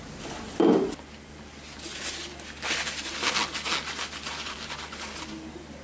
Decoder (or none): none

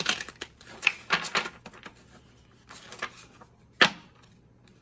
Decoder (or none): none